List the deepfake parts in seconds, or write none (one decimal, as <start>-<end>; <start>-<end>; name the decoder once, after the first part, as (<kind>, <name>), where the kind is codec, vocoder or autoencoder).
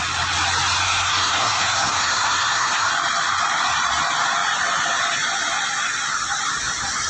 0.8-2.9 (codec, SNAC)